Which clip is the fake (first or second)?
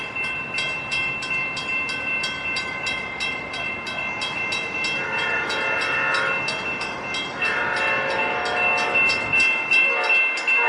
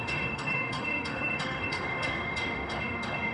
second